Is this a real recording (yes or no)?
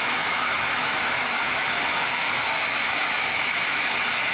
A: no